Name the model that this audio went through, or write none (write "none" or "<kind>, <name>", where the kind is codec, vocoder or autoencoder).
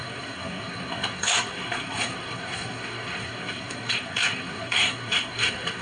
codec, SNAC